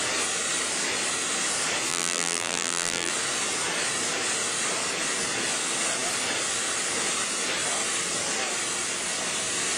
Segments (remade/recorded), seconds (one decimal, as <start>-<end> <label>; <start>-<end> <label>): 0.0-1.9 recorded; 1.9-3.1 remade; 3.1-9.8 recorded